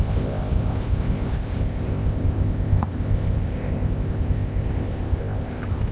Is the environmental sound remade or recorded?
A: remade